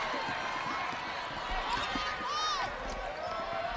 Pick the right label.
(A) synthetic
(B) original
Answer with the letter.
B